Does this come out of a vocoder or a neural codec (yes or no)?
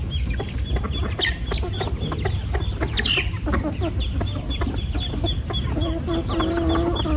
no